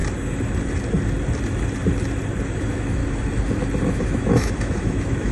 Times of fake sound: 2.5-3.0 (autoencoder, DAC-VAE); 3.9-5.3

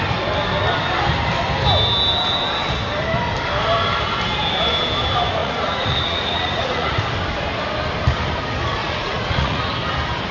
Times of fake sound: 5.4-7.0 (vocoder, Vocos); 8.8-9.7

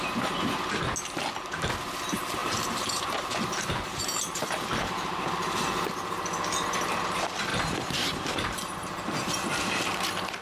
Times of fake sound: 2.4-4.6 (vocoder, BigVGAN v2); 7.5-9.3

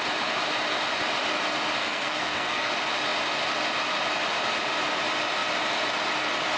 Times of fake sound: 1.8-2.7 (codec, SNAC)

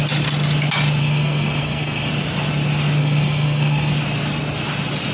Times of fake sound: 1.0-2.1 (codec, SNAC); 3.0-3.9

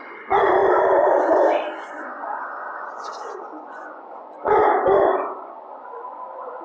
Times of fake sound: 0.0-4.6 (vocoder, Vocos); 5.1-6.6